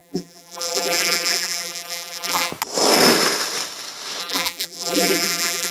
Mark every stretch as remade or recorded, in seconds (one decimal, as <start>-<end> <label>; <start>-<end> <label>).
0.0-2.5 remade; 2.5-4.2 recorded; 4.2-5.7 remade